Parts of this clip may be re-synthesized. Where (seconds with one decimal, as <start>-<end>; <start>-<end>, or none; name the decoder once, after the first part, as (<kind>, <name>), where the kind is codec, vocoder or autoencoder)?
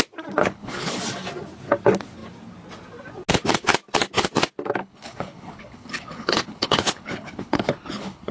0.4-1.0 (codec, HILCodec); 4.8-8.3